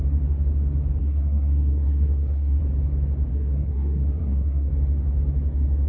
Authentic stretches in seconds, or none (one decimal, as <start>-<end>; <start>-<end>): 0.0-1.0; 2.6-3.3; 4.7-5.9